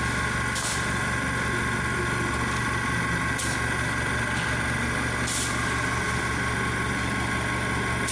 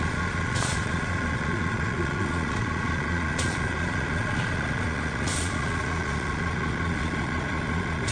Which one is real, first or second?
first